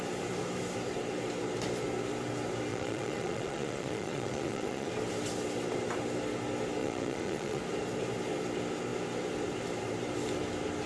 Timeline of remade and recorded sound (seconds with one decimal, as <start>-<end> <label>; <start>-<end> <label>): 0.0-2.7 recorded; 2.7-4.9 remade; 4.9-6.8 recorded; 6.8-7.6 remade; 7.6-10.9 recorded